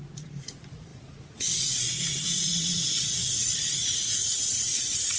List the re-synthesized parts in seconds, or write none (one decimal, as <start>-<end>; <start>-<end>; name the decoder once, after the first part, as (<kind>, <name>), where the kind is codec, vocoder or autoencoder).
0.0-5.2 (vocoder, Vocos)